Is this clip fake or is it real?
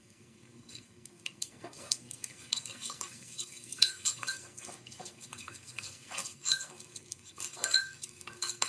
fake